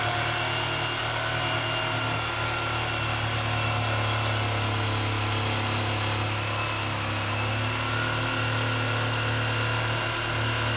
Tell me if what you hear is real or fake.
real